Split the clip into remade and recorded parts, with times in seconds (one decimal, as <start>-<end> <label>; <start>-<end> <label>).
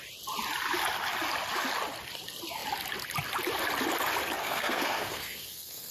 0.0-4.4 recorded; 4.4-5.9 remade